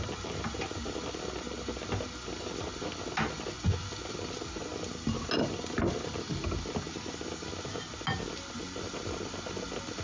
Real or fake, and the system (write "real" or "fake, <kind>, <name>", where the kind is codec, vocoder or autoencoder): real